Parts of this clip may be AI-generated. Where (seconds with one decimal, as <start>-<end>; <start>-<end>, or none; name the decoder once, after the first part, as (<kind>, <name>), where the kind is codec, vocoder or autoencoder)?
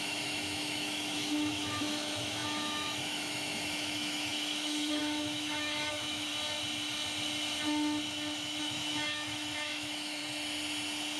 0.0-6.3 (autoencoder, DAC-VAE); 8.6-10.2